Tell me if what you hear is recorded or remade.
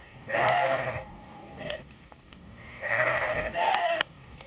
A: remade